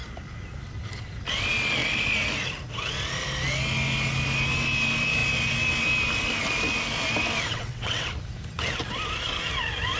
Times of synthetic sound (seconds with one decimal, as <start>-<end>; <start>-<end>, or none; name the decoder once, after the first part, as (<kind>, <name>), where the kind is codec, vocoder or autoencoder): 7.5-8.1 (vocoder, WaveNeXt)